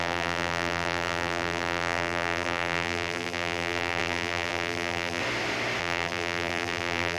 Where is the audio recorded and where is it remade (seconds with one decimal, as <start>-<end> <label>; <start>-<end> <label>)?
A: 0.0-5.2 remade; 5.2-5.8 recorded; 5.8-7.2 remade

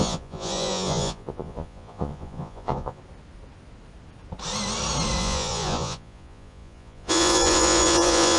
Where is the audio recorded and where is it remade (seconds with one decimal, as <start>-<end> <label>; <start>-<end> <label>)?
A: 0.0-3.0 remade; 3.0-5.2 recorded; 5.2-8.4 remade

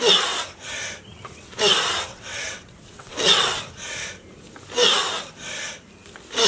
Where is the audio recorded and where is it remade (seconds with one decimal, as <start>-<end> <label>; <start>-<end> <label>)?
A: 0.0-1.1 recorded; 1.1-1.6 remade; 1.6-2.1 recorded; 2.1-3.6 remade; 3.6-6.5 recorded